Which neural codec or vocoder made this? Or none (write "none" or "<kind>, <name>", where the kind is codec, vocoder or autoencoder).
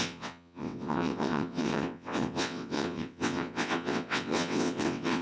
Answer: vocoder, WaveNeXt